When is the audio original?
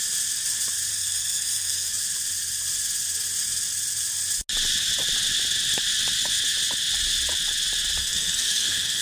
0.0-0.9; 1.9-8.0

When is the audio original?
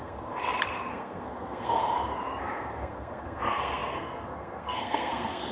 0.4-0.9; 1.8-2.4